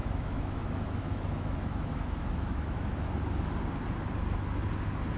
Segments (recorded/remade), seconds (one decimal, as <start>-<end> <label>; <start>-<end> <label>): 0.0-3.1 remade; 3.1-5.2 recorded